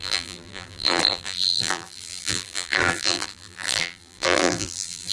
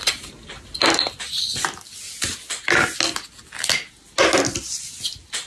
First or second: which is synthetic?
first